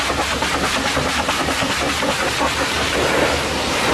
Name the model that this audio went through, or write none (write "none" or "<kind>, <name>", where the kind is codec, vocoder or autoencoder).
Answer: none